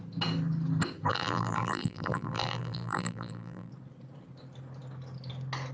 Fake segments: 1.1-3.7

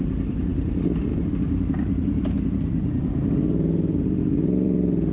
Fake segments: 0.0-5.1

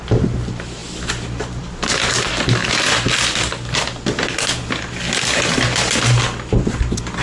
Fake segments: none

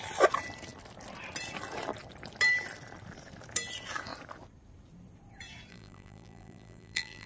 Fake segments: 5.7-7.3

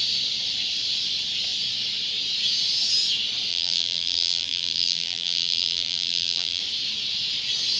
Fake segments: 3.5-6.6

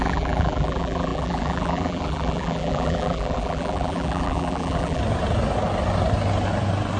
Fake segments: 0.0-5.0

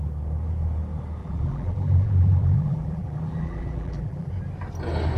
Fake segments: 1.2-4.3

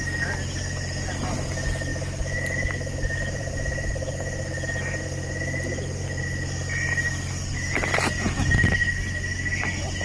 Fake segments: 1.9-6.0